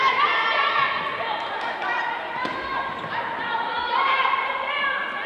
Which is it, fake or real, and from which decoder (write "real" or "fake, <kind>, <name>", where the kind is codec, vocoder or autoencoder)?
fake, vocoder, BigVGAN v2